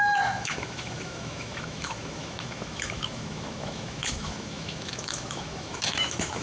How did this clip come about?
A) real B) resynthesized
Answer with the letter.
B